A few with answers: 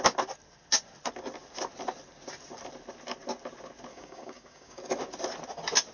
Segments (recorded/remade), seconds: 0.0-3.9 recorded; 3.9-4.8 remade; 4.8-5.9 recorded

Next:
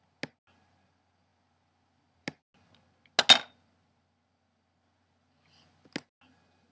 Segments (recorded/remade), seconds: 0.0-6.7 recorded

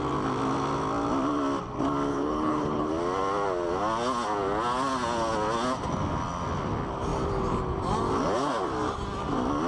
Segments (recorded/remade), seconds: 0.0-2.1 recorded; 2.1-2.9 remade; 2.9-9.7 recorded

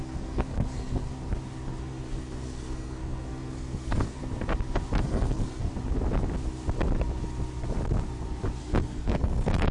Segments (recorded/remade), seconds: 0.0-1.1 remade; 1.1-1.8 recorded; 1.8-4.2 remade; 4.2-5.0 recorded; 5.0-5.7 remade; 5.7-8.6 recorded; 8.6-9.7 remade